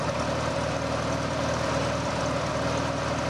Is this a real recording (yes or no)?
yes